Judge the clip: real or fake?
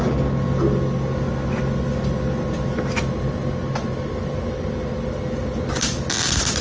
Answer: real